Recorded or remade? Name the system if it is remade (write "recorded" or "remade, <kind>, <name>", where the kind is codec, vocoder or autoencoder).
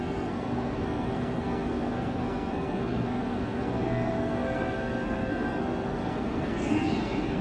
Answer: remade, codec, SNAC